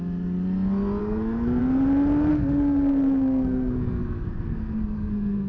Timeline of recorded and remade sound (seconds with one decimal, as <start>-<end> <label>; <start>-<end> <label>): 0.0-1.0 recorded; 1.0-1.6 remade; 1.6-2.3 recorded; 2.3-5.5 remade